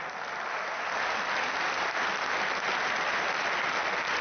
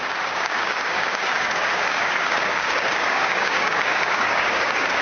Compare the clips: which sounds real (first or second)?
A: first